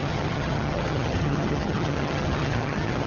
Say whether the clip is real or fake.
fake